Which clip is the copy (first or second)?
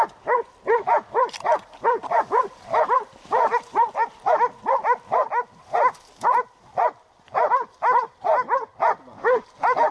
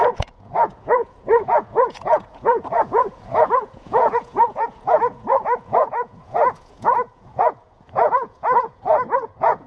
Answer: second